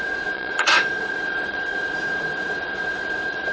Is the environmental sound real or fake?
fake